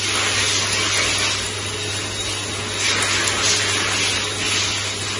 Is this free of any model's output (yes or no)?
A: yes